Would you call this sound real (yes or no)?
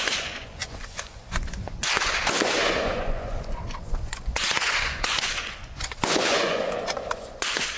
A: no